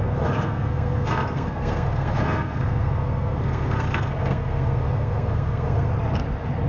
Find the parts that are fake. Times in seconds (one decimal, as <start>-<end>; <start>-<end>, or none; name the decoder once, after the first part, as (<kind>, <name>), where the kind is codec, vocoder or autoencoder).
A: 0.0-5.9 (codec, SNAC)